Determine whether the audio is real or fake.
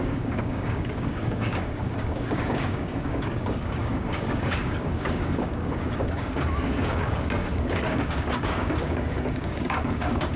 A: fake